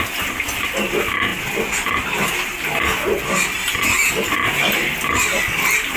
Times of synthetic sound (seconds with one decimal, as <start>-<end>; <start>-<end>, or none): none